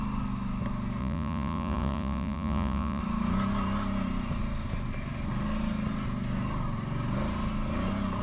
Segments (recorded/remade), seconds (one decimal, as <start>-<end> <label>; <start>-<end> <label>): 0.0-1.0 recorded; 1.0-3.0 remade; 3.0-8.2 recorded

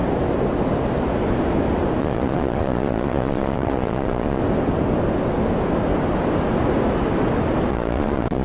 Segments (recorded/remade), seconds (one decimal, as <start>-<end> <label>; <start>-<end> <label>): 0.0-2.0 recorded; 2.0-4.4 remade; 4.4-7.7 recorded; 7.7-8.4 remade

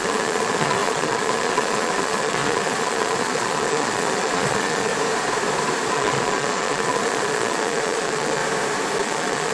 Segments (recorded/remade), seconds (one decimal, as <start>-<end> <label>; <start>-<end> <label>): 0.0-4.9 remade; 4.9-5.9 recorded; 5.9-8.4 remade; 8.4-9.0 recorded; 9.0-9.5 remade